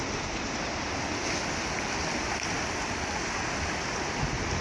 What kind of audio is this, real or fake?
real